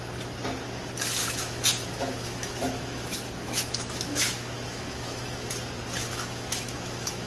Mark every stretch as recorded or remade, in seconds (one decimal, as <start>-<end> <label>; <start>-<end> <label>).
0.0-1.2 recorded; 1.2-5.5 remade; 5.5-6.0 recorded; 6.0-7.3 remade